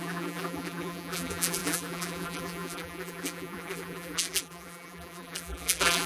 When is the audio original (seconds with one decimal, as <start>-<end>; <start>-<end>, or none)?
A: none